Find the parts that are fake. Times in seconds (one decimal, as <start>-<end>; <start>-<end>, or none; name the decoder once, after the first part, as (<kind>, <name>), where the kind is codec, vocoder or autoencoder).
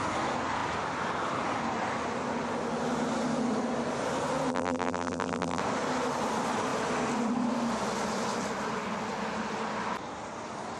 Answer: 4.5-5.6 (vocoder, BigVGAN v2)